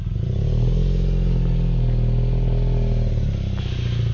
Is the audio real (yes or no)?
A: yes